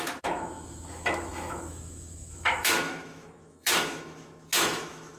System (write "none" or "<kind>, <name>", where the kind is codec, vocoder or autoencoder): autoencoder, DAC-VAE